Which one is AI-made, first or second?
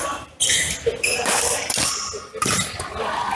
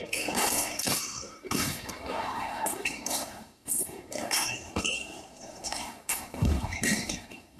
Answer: second